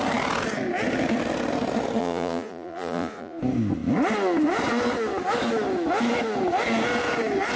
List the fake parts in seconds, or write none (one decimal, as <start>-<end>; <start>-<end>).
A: 2.0-3.4